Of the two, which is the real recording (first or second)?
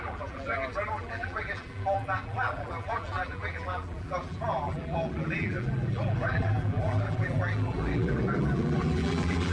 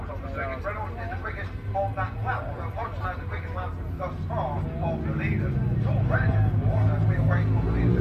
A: second